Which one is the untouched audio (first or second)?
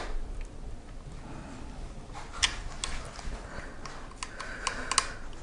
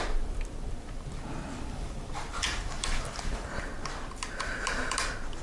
first